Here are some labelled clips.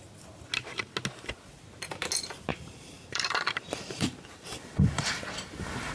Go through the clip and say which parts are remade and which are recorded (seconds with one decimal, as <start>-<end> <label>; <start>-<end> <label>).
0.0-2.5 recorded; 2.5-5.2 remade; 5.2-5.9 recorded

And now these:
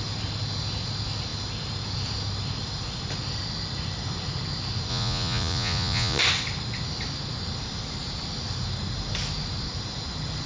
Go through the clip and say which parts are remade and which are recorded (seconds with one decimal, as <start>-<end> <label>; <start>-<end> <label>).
0.0-4.9 recorded; 4.9-6.2 remade; 6.2-10.5 recorded

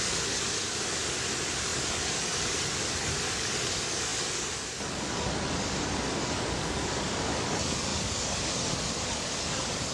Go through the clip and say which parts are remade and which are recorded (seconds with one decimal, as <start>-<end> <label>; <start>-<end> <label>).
0.0-9.9 remade